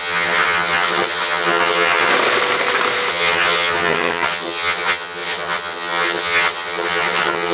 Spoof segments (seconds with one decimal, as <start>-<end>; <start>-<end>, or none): 0.0-2.1; 3.1-7.5